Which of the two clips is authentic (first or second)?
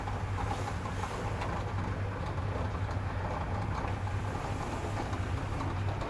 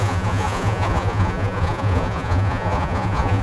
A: first